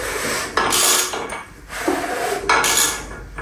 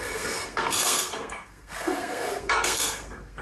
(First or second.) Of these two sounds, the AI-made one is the second